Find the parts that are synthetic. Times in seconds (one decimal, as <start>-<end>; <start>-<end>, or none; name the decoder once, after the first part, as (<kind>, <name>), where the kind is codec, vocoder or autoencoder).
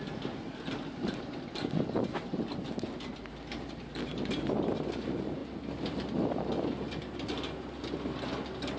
none